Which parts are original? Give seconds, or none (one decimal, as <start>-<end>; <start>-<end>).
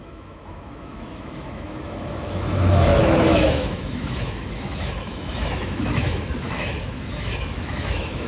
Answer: none